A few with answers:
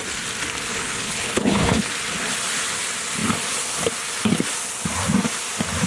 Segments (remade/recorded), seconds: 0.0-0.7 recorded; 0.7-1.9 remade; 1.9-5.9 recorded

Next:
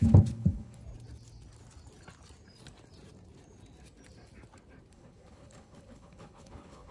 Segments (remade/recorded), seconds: 0.0-0.8 remade; 0.8-4.9 recorded; 4.9-6.9 remade

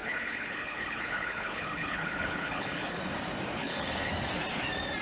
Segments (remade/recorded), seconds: 0.0-3.0 remade; 3.0-3.6 recorded; 3.6-4.1 remade; 4.1-5.0 recorded

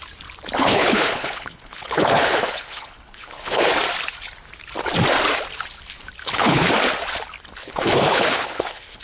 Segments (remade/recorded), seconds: 0.0-0.6 recorded; 0.6-3.7 remade; 3.7-6.2 recorded; 6.2-6.7 remade; 6.7-7.6 recorded; 7.6-9.0 remade

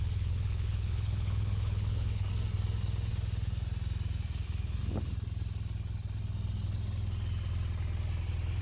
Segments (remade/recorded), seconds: 0.0-2.3 remade; 2.3-8.6 recorded